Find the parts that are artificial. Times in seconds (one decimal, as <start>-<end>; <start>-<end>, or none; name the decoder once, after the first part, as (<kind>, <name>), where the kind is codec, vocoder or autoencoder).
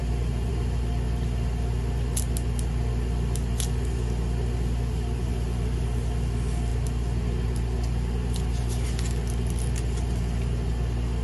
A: none